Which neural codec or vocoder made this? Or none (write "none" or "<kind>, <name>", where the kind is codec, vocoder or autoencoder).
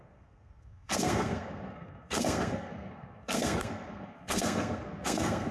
codec, SNAC